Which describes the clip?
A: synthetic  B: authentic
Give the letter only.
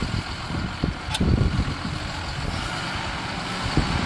B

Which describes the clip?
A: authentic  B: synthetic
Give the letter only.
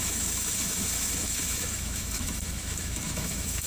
B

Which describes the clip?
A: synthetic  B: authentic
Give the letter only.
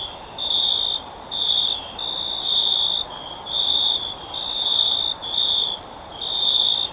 B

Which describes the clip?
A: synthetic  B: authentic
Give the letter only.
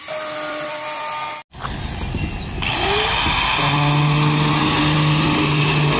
B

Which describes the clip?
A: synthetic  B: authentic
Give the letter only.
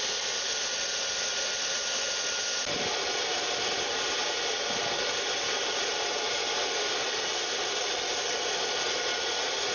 B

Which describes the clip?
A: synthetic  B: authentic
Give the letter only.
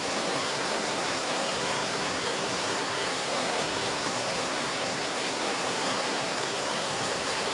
A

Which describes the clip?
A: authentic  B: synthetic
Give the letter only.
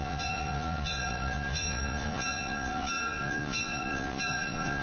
B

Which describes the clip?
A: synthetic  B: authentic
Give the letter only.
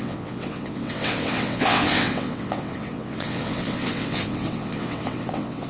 A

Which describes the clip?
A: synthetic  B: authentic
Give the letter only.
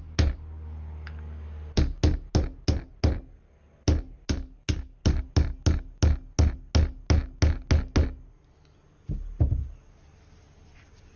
B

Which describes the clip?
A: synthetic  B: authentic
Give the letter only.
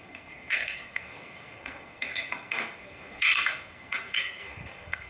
A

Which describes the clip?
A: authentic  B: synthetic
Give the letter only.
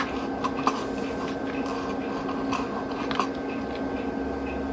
A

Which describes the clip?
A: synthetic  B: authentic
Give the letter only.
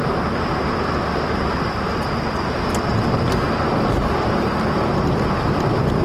A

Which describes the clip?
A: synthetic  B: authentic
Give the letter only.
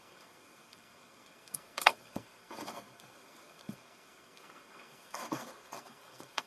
A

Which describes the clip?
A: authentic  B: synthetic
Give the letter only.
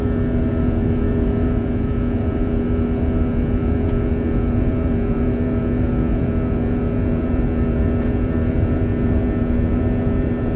B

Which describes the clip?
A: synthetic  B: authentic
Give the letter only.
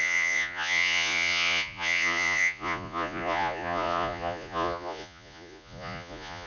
A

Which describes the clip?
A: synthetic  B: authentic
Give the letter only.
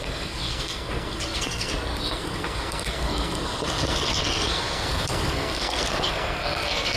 A